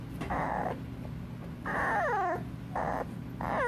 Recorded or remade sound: recorded